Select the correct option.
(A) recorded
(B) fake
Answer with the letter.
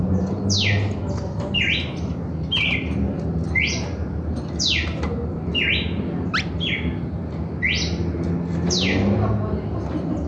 A